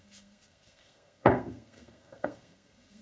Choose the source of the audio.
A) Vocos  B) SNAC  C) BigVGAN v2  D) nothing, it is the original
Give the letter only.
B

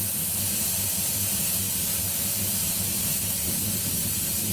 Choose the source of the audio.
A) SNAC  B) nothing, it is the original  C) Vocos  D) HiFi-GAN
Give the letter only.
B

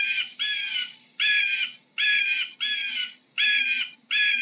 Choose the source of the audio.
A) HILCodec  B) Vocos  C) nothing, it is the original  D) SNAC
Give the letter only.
C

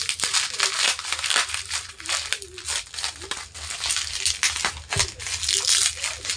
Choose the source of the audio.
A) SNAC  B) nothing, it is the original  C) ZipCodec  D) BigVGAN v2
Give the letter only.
B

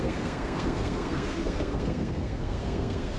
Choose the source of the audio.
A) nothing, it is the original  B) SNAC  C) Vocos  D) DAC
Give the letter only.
B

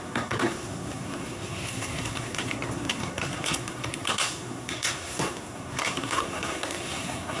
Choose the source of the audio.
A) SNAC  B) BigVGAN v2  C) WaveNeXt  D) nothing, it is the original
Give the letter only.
A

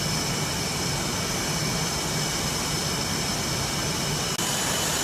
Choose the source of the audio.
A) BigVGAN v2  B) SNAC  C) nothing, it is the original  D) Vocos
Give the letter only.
C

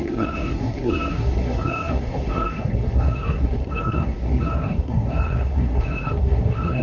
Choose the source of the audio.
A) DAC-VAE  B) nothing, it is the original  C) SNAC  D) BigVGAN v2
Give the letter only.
C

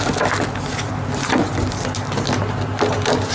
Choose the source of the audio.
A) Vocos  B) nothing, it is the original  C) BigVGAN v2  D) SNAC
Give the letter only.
B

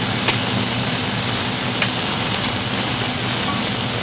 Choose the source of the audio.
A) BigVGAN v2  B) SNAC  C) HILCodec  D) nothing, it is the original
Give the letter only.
D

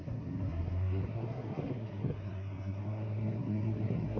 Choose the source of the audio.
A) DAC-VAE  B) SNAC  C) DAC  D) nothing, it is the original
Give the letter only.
B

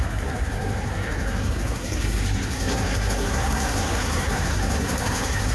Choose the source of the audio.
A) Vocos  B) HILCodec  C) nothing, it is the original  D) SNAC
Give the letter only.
D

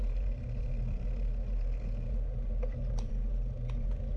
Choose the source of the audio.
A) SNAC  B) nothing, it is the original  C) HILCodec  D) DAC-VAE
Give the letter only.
B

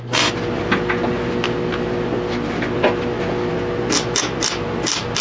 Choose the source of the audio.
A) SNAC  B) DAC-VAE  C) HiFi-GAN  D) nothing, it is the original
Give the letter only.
D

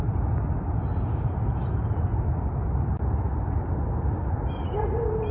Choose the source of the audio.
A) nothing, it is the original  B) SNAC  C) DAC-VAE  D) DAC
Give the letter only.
A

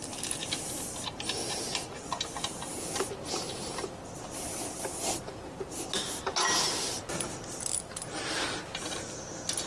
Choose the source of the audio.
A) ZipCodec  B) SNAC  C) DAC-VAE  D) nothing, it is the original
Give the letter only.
D